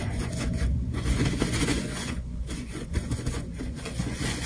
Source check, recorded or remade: remade